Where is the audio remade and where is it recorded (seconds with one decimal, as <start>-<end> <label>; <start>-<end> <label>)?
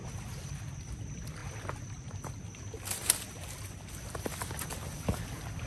0.0-5.7 recorded